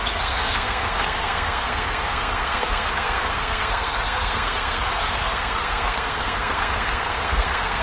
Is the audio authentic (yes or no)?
no